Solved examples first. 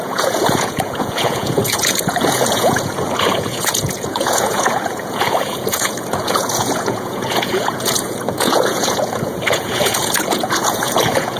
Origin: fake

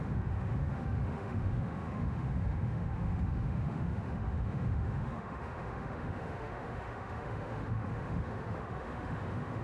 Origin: fake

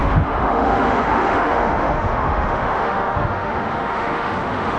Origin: fake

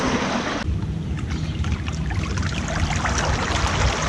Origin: real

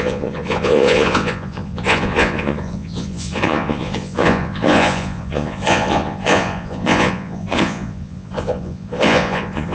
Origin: fake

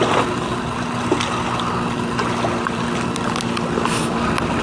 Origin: real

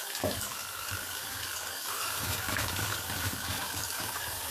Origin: fake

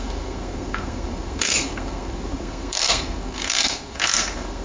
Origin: fake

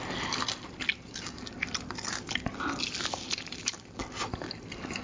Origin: real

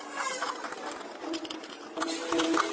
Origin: real